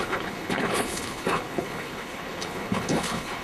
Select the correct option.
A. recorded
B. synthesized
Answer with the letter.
B